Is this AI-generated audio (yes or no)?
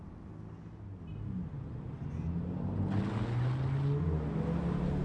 no